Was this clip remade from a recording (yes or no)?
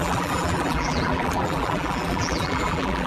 yes